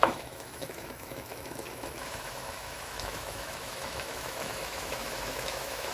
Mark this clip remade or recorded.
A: remade